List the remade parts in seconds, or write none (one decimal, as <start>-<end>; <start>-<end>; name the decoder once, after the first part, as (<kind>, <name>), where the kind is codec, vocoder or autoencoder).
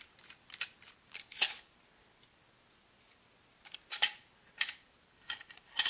4.2-5.5 (vocoder, BigVGAN v2)